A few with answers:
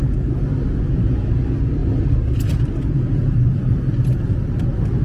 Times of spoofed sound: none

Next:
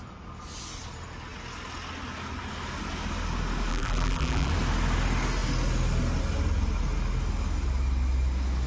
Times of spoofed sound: 3.7-4.5 (vocoder, BigVGAN v2)

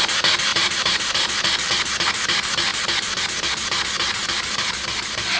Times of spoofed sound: 0.5-1.7 (vocoder, BigVGAN v2)